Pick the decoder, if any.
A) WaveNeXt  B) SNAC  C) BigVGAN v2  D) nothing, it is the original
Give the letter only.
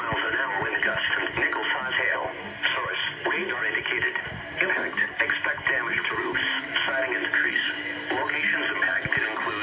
D